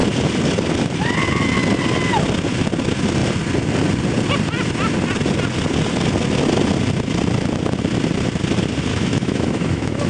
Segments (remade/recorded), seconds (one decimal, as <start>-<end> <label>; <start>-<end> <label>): 0.0-8.9 recorded; 8.9-10.1 remade